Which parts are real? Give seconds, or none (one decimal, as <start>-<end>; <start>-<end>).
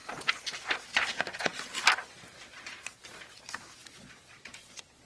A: 0.0-3.8